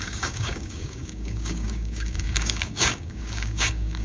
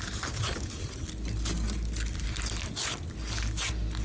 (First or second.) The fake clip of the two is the first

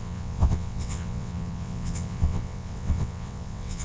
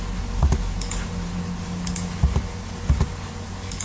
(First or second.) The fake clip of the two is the first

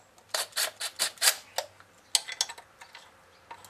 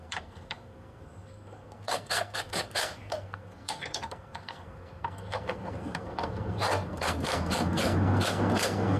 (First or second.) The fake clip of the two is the second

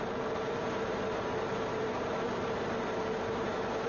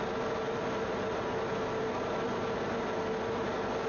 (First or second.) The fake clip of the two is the first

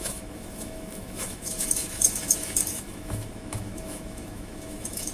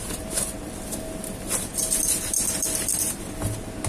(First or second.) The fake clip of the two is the first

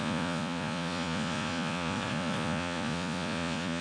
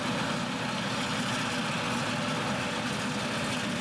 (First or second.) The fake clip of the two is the first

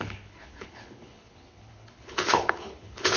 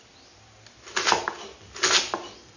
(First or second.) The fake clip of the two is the first